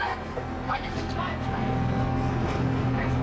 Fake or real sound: fake